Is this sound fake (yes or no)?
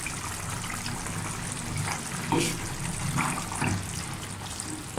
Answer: no